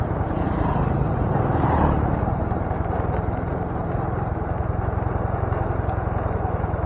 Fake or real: real